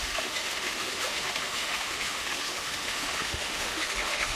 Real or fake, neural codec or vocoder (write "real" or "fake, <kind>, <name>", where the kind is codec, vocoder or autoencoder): fake, autoencoder, DAC-VAE